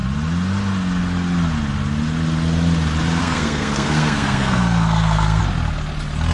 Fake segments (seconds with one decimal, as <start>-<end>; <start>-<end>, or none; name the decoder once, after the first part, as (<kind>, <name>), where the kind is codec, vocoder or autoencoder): 3.2-5.4 (codec, SNAC)